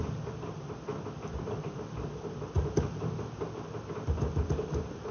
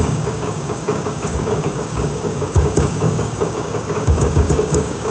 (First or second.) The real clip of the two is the first